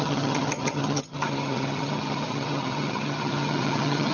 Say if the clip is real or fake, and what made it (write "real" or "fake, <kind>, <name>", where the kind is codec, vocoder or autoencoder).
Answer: fake, vocoder, HiFi-GAN